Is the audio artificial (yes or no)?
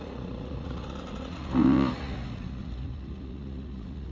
yes